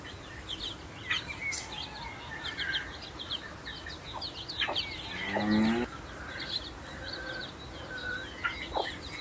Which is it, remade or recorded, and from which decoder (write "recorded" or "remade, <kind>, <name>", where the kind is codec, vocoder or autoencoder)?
recorded